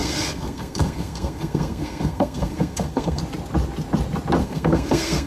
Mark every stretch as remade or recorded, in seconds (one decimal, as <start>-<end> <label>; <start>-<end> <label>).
0.0-3.2 remade; 3.2-4.4 recorded; 4.4-5.3 remade